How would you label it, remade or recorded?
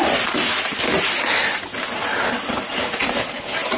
recorded